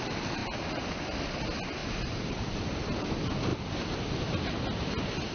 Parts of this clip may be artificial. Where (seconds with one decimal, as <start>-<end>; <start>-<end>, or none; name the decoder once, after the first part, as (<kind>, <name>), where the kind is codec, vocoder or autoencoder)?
none